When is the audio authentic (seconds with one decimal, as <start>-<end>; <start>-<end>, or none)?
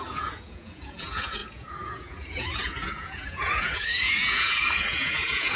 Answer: none